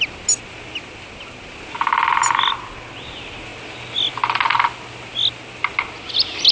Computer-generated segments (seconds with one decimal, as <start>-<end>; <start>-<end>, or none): none